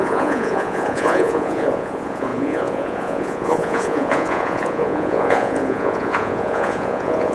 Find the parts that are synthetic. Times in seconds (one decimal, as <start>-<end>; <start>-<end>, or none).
0.0-7.3